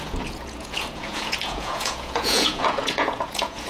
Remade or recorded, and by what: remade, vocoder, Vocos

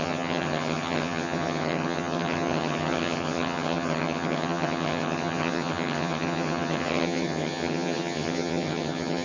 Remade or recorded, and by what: remade, vocoder, HiFi-GAN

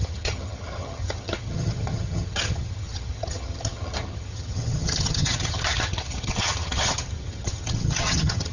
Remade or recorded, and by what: remade, vocoder, HiFi-GAN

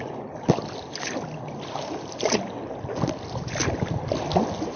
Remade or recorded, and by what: recorded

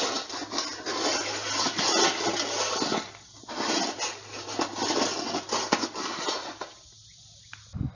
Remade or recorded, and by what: recorded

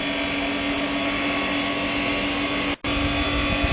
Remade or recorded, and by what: recorded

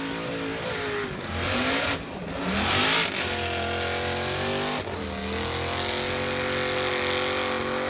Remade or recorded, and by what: recorded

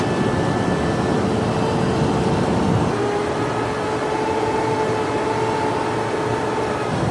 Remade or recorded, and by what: recorded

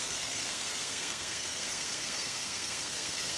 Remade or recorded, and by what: remade, codec, SNAC